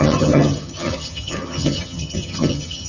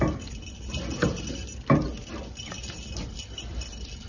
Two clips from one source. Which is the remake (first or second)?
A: first